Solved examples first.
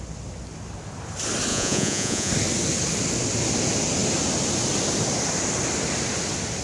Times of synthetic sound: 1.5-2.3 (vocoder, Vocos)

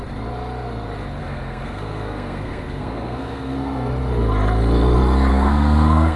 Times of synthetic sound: 1.2-3.9 (codec, SNAC); 5.3-6.2